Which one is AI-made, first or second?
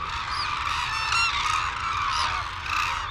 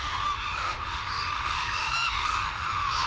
second